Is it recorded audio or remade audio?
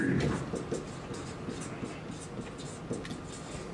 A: recorded